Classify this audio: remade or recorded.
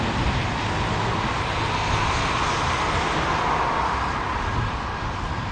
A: recorded